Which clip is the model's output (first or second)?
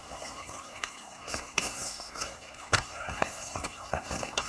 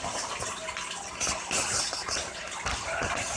first